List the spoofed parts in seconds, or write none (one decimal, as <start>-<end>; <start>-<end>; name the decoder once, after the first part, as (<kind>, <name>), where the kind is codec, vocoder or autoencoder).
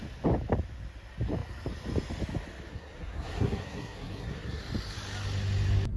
2.7-4.6 (codec, SNAC)